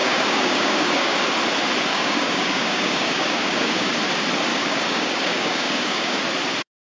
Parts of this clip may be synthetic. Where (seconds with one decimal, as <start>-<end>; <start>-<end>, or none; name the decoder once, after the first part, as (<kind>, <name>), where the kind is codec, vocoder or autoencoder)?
0.0-1.2 (codec, DAC); 1.9-3.9; 4.5-6.2